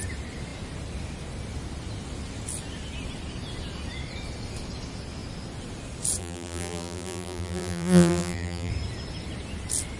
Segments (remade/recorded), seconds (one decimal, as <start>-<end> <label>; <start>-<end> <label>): 0.0-6.2 recorded; 6.2-8.7 remade; 8.7-10.0 recorded